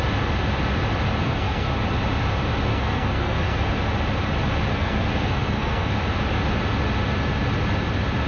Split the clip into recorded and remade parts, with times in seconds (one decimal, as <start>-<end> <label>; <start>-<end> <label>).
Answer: 0.0-1.2 recorded; 1.2-1.7 remade; 1.7-2.7 recorded; 2.7-3.7 remade; 3.7-4.7 recorded; 4.7-5.9 remade; 5.9-8.3 recorded